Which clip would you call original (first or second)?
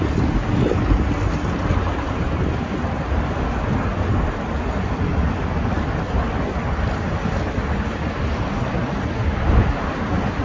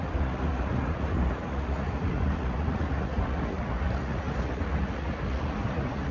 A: first